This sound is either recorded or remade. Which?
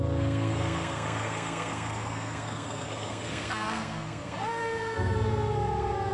remade